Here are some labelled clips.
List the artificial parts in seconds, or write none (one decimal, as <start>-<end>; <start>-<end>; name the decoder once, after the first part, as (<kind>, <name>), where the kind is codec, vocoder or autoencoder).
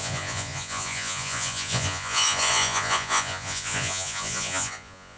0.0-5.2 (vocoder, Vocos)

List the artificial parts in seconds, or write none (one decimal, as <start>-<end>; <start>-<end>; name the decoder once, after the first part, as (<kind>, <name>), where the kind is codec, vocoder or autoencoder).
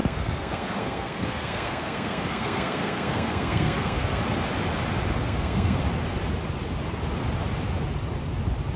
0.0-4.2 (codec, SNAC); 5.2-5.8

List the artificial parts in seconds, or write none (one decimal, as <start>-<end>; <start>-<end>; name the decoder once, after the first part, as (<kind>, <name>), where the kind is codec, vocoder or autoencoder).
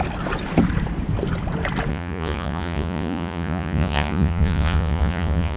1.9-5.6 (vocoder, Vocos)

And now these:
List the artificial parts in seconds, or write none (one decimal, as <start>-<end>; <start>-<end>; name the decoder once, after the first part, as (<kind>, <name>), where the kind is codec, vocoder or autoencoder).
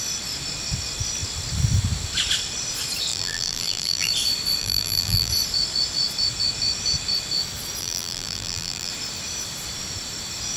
3.1-4.1 (vocoder, BigVGAN v2); 4.6-5.3; 7.8-8.9